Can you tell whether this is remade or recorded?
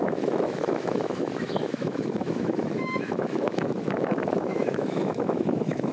remade